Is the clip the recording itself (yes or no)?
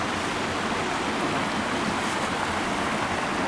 yes